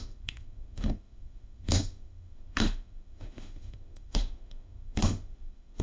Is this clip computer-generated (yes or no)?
yes